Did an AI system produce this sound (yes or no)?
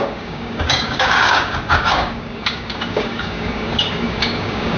yes